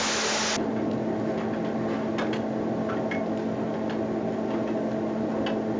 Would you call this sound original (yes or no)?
yes